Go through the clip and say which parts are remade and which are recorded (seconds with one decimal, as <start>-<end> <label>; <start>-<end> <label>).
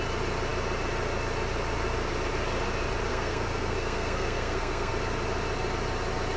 0.0-3.1 recorded; 3.1-4.9 remade; 4.9-6.4 recorded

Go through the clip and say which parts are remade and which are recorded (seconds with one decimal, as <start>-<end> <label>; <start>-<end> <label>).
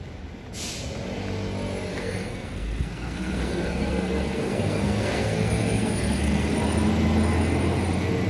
0.0-1.9 recorded; 1.9-6.5 remade; 6.5-8.3 recorded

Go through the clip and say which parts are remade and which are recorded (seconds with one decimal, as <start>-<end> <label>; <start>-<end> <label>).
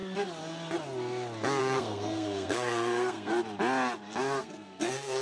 0.0-1.6 recorded; 1.6-3.3 remade; 3.3-4.4 recorded; 4.4-5.2 remade